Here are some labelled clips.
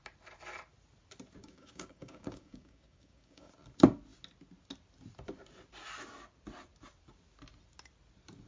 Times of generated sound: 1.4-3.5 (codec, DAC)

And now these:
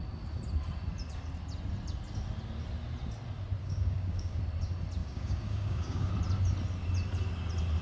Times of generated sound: 3.6-4.4 (codec, DAC); 5.0-6.1

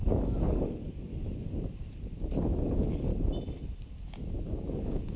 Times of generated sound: 0.0-1.1 (codec, DAC); 2.4-3.1; 4.6-5.2

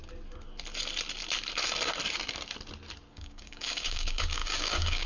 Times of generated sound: 3.1-5.1 (codec, DAC)

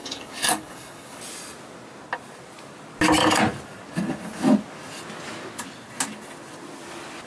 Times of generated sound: 0.0-1.2 (codec, DAC)